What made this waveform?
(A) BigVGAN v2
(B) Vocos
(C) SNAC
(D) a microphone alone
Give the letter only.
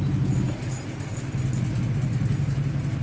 D